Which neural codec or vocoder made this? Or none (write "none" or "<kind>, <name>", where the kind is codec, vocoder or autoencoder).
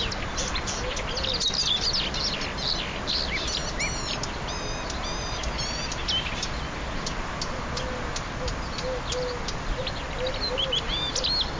none